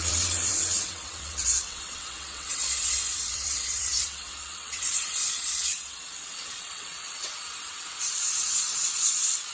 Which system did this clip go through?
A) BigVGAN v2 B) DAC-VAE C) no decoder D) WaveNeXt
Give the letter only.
D